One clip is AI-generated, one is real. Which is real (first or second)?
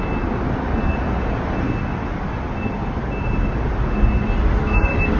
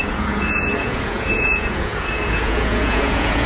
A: first